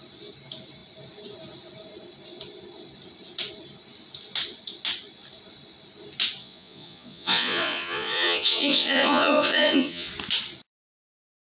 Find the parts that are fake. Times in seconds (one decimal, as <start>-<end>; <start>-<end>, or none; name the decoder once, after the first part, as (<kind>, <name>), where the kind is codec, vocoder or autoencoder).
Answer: 6.4-10.1 (vocoder, Vocos)